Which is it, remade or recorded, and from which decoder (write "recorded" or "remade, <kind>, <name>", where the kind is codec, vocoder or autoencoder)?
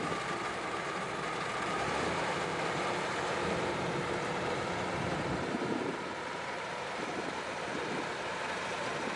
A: remade, vocoder, BigVGAN v2